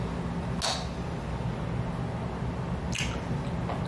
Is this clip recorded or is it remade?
recorded